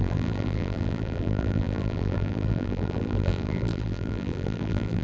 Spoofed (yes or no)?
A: yes